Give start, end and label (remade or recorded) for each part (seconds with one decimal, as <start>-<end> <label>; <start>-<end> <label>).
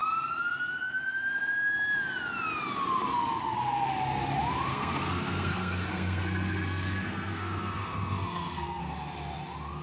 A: 0.0-4.7 recorded; 4.7-8.8 remade; 8.8-9.8 recorded